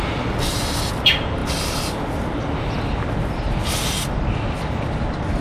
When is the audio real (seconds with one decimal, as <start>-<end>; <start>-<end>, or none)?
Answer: 0.0-5.4